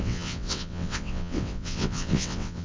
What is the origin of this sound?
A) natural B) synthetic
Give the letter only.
B